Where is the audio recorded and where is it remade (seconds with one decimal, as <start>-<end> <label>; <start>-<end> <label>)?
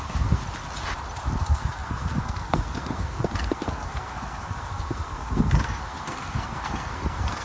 0.0-0.4 remade; 0.4-1.4 recorded; 1.4-7.4 remade